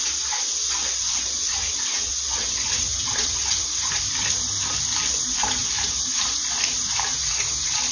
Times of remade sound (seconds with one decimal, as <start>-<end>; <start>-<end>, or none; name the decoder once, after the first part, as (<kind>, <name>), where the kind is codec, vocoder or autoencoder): 0.8-3.7 (vocoder, WaveNeXt)